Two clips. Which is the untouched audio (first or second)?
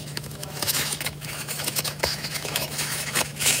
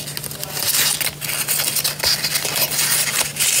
second